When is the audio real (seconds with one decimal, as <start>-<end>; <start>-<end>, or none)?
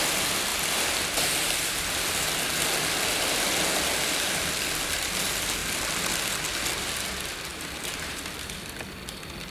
0.0-7.5; 8.2-9.5